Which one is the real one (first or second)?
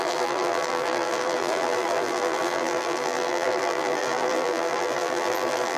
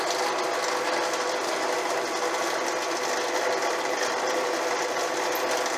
second